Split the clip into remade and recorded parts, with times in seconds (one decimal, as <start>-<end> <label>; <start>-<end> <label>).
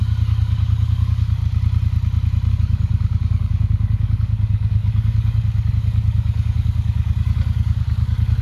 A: 0.0-1.4 remade; 1.4-2.5 recorded; 2.5-8.4 remade